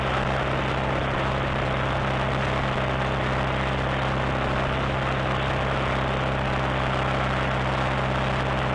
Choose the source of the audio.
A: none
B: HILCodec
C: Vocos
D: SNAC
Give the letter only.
A